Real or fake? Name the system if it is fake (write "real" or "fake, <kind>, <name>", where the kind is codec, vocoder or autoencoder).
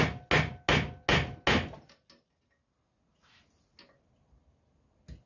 real